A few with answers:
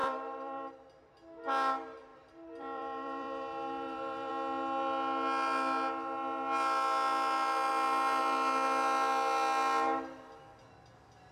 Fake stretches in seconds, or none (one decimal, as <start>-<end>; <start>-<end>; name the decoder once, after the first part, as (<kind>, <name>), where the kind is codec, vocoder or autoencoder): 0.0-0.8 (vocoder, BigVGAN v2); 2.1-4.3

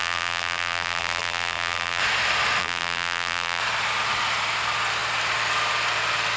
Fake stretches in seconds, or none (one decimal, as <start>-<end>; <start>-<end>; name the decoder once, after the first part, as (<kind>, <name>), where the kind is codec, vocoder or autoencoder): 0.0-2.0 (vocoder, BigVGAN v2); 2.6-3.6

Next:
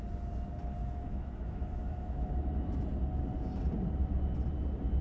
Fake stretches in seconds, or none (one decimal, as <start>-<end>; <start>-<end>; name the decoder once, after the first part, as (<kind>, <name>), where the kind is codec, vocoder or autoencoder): 0.8-2.5 (autoencoder, DAC-VAE)

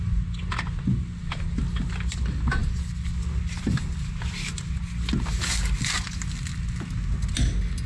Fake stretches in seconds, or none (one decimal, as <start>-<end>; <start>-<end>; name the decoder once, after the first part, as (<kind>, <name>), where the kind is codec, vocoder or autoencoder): none